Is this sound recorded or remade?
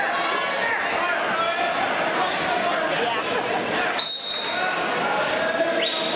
recorded